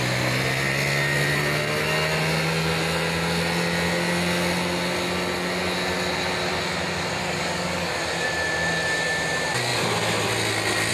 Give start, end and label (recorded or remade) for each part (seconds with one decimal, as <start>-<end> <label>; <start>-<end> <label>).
0.0-7.2 recorded; 7.2-8.0 remade; 8.0-10.9 recorded